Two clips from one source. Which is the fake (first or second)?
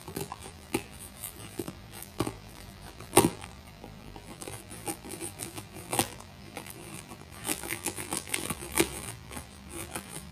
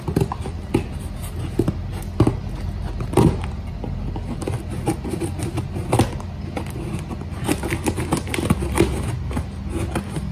first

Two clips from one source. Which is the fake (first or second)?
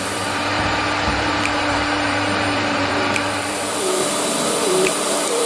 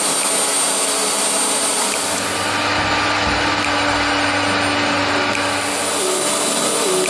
first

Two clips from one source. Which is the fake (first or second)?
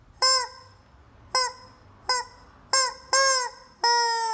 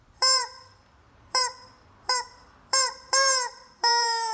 second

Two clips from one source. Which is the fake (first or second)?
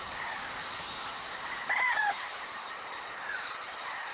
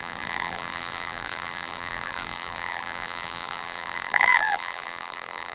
second